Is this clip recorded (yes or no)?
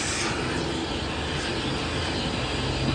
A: yes